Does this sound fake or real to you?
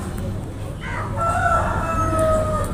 real